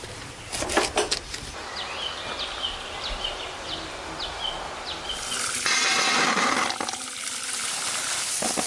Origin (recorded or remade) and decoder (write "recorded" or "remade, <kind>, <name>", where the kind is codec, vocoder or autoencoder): recorded